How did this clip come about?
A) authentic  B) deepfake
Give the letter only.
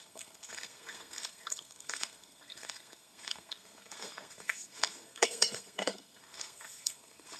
B